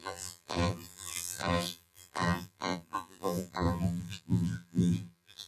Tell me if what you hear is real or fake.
fake